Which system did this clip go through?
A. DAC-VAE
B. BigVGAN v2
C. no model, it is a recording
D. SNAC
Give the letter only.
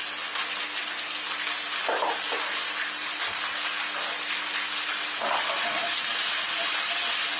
C